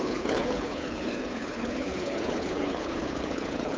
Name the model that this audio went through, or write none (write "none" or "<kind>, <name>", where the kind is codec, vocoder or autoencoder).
codec, HILCodec